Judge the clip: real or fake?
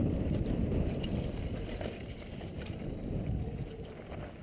real